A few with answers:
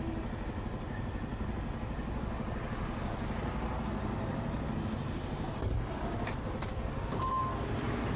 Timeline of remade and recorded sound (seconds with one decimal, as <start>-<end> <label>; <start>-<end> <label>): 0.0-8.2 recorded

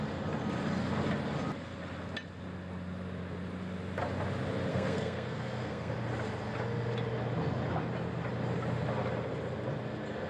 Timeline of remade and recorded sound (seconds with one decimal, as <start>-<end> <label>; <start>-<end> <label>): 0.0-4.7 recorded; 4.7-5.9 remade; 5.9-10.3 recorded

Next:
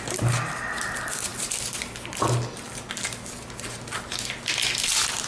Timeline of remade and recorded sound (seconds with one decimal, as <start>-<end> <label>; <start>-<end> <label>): 0.0-5.3 recorded

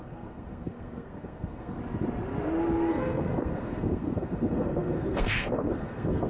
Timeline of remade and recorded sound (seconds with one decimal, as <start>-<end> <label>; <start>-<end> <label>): 0.0-1.8 remade; 1.8-2.9 recorded; 2.9-6.3 remade

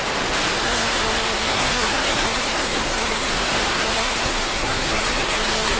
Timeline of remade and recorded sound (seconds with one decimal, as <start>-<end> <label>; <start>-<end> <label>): 0.0-0.6 recorded; 0.6-3.3 remade; 3.3-3.7 recorded; 3.7-5.8 remade

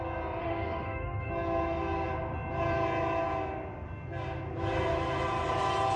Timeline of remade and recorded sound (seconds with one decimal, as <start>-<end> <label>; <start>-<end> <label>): 0.0-0.4 recorded; 0.4-1.3 remade; 1.3-6.0 recorded

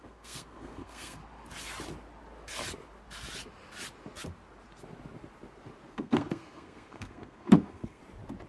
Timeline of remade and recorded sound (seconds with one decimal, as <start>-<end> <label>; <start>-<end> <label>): 0.0-1.2 remade; 1.2-5.9 recorded; 5.9-8.0 remade; 8.0-8.5 recorded

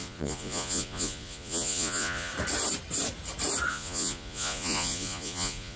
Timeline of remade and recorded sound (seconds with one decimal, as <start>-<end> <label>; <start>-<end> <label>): 0.0-2.3 remade; 2.3-3.7 recorded; 3.7-5.8 remade